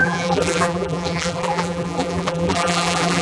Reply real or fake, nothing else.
fake